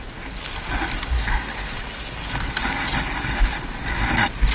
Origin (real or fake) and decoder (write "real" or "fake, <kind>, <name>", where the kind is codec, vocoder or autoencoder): real